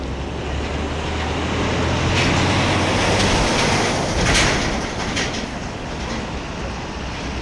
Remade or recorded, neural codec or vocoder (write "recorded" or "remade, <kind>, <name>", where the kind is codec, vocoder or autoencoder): recorded